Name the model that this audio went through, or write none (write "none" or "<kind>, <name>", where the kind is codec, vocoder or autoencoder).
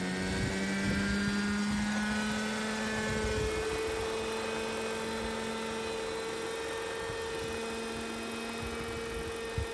none